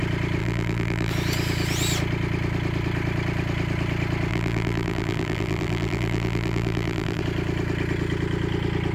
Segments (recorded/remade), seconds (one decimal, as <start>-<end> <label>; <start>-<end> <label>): 0.0-0.4 recorded; 0.4-1.1 remade; 1.1-4.3 recorded; 4.3-7.2 remade; 7.2-8.9 recorded